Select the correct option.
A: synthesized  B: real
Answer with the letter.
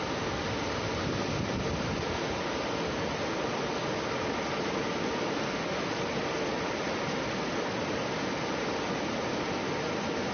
B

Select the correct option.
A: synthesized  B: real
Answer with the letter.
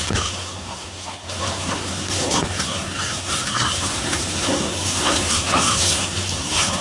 A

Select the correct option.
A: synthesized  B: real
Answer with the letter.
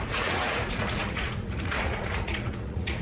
A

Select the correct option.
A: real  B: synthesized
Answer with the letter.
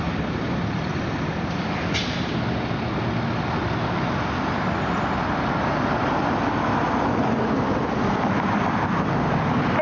A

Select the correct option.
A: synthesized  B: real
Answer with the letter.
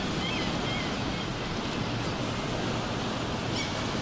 B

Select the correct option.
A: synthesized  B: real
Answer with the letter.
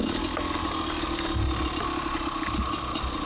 B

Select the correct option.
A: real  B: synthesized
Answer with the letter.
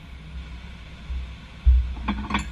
A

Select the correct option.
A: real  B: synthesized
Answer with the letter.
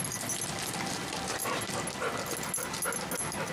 A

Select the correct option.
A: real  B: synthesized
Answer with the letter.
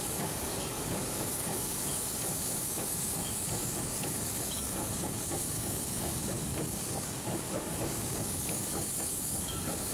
B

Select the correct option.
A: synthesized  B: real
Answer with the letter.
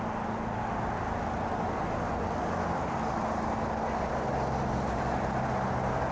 B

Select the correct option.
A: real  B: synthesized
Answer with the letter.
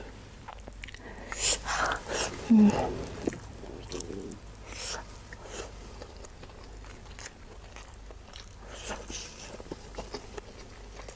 A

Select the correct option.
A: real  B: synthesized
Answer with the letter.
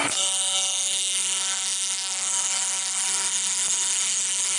B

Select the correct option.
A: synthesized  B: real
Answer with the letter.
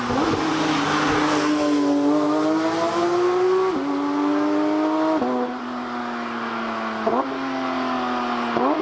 B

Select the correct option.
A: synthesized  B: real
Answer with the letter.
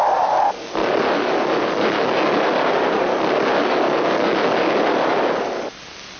B